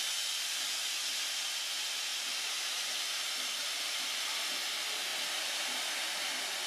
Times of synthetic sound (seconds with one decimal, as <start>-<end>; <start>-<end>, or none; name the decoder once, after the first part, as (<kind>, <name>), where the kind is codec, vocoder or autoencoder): 3.6-4.5 (vocoder, BigVGAN v2); 5.1-6.7